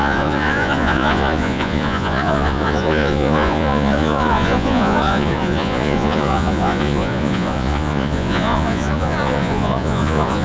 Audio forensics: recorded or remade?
remade